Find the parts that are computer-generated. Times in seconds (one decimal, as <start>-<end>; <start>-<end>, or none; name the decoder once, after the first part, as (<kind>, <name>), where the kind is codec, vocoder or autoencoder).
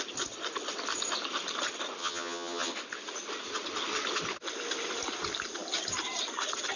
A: 2.0-2.7 (vocoder, HiFi-GAN)